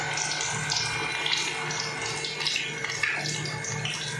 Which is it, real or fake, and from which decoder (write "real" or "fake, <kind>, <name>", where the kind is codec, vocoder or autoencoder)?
real